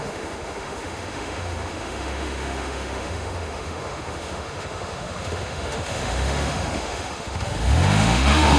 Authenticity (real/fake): fake